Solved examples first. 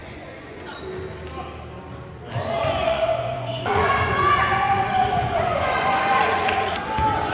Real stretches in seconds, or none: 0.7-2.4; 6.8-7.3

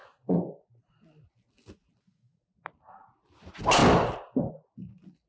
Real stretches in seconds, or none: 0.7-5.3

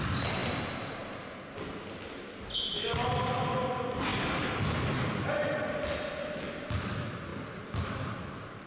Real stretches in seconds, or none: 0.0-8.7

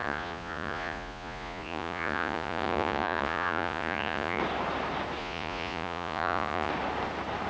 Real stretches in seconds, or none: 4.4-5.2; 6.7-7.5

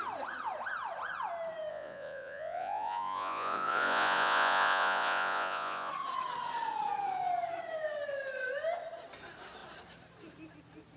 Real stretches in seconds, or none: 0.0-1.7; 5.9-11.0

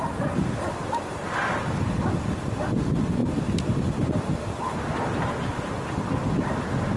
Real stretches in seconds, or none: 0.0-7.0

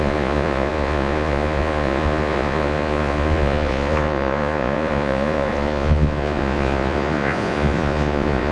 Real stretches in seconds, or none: none

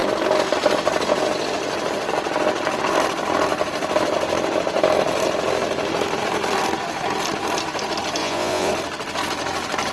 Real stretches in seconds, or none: 0.0-8.2; 8.7-9.9